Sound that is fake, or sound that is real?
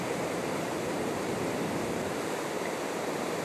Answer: fake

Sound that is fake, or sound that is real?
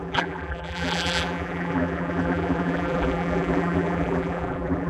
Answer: fake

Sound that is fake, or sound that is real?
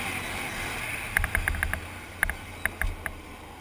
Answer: real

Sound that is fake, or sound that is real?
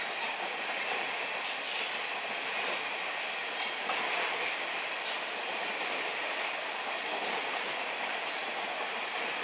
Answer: fake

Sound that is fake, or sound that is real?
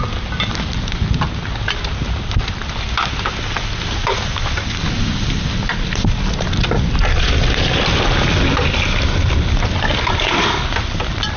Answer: real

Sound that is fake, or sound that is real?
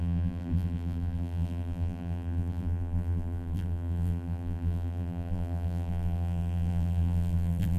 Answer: fake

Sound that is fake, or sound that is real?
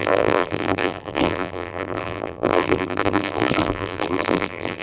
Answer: fake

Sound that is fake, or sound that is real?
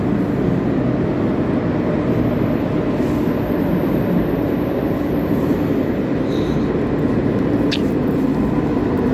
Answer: real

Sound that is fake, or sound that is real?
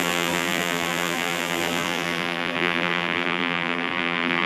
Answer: fake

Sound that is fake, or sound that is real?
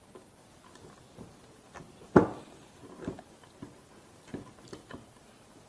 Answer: fake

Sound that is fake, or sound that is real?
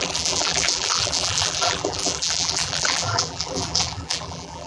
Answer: fake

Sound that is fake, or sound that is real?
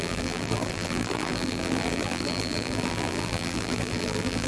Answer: fake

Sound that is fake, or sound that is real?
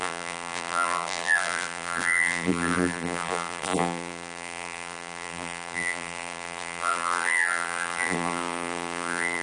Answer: fake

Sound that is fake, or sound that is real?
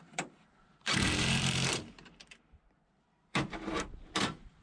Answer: fake